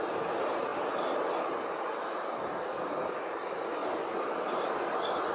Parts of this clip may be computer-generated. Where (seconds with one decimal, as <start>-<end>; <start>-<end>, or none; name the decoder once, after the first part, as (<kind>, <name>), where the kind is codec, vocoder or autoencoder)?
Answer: 0.0-3.8 (vocoder, BigVGAN v2); 4.3-5.3